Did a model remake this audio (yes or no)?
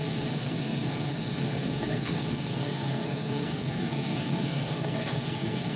yes